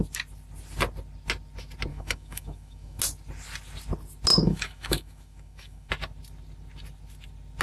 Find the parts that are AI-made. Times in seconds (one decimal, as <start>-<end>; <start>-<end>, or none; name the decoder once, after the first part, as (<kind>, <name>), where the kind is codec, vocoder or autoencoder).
1.9-3.0 (autoencoder, DAC-VAE); 4.3-5.9